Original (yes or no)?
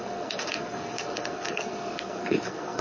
no